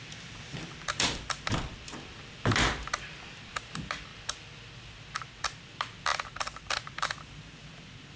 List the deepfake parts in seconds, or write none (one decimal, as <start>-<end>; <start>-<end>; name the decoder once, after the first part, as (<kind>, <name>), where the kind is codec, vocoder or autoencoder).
0.0-4.1 (vocoder, BigVGAN v2); 4.9-8.2